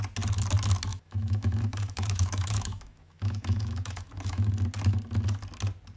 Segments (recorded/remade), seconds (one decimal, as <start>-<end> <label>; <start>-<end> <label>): 0.0-0.9 recorded; 0.9-4.5 remade; 4.5-6.0 recorded